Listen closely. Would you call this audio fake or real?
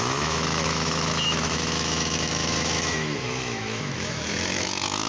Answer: fake